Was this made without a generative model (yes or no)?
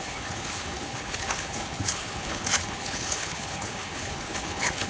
no